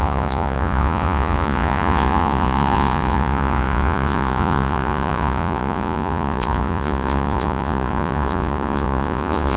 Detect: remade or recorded remade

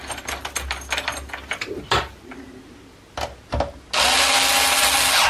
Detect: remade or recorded recorded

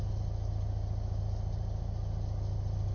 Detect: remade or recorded recorded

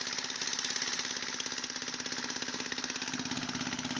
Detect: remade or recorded recorded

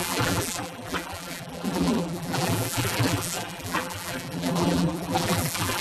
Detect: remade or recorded remade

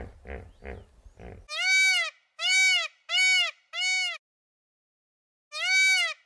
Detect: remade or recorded recorded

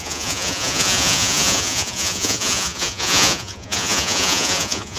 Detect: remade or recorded remade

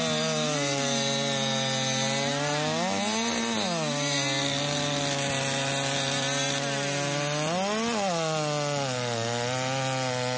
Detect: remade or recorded recorded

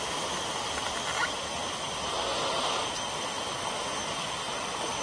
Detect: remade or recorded recorded